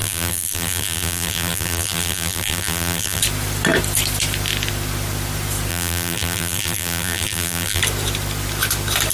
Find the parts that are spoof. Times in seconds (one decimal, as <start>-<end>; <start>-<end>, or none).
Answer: 0.0-3.2; 5.7-7.8